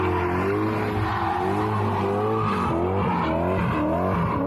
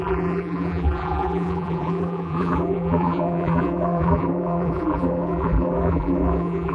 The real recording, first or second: first